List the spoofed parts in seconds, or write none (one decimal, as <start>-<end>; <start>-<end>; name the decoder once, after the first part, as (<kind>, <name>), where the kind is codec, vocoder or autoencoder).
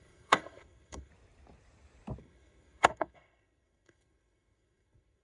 0.0-1.1 (codec, SNAC); 2.2-5.2